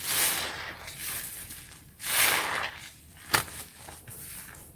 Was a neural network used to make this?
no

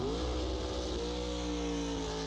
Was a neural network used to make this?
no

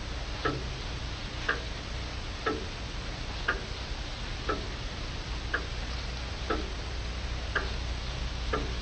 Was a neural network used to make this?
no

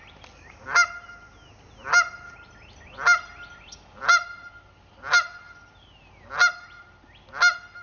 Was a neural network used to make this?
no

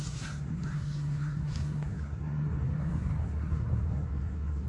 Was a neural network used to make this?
yes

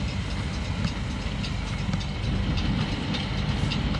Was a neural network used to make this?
no